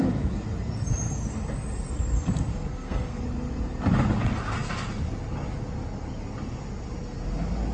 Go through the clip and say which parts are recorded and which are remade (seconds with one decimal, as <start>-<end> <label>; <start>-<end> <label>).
0.0-2.5 recorded; 2.5-3.2 remade; 3.2-7.7 recorded